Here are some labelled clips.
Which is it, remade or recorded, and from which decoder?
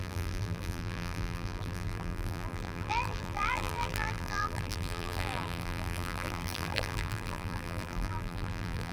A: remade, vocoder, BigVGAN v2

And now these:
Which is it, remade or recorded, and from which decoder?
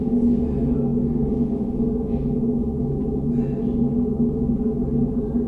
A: recorded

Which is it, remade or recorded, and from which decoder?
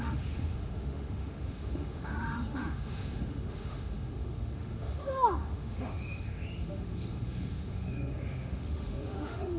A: remade, autoencoder, DAC-VAE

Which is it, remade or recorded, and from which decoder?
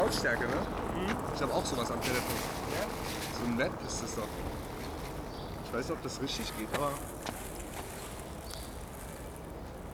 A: recorded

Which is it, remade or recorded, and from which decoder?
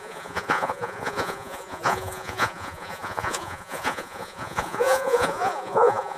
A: remade, vocoder, Vocos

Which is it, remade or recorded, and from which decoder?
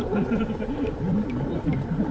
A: recorded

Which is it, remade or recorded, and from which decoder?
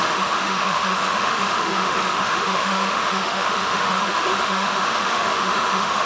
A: remade, autoencoder, DAC-VAE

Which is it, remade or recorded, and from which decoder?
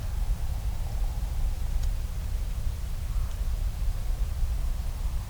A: recorded